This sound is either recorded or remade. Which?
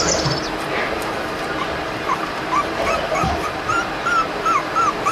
remade